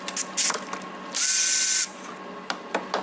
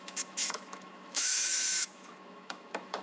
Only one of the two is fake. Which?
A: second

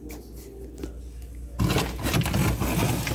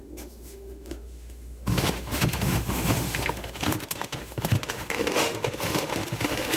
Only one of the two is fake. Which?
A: second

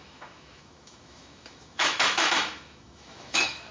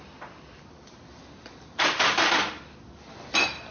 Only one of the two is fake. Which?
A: first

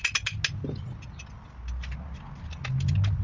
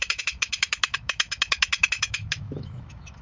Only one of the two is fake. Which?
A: second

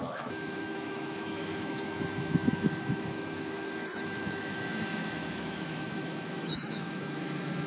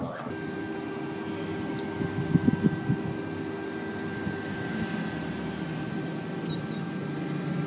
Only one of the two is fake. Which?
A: first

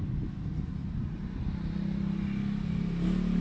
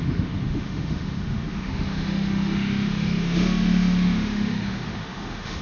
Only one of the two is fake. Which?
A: second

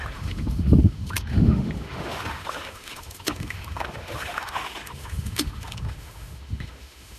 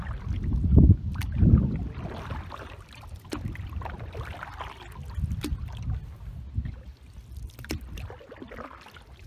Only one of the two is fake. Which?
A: first